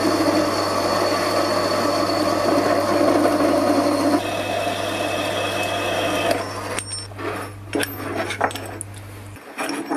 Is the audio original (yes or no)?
yes